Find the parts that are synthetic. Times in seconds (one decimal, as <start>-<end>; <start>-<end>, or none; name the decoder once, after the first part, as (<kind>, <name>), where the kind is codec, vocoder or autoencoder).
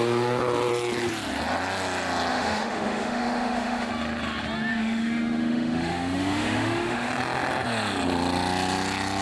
2.3-3.9 (autoencoder, DAC-VAE); 4.7-7.1